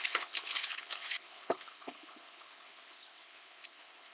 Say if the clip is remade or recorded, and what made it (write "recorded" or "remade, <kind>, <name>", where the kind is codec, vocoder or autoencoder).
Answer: remade, codec, HILCodec